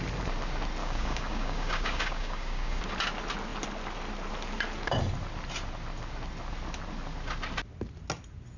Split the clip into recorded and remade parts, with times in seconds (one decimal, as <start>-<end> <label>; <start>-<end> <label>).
0.0-0.8 recorded; 0.8-2.8 remade; 2.8-8.6 recorded